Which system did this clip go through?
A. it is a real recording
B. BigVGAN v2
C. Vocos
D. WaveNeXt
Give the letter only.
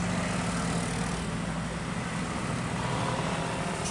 A